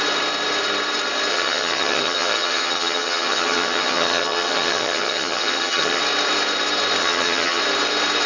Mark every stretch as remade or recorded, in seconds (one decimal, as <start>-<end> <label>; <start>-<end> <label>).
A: 0.0-1.3 recorded; 1.3-6.0 remade; 6.0-7.0 recorded; 7.0-7.6 remade; 7.6-8.3 recorded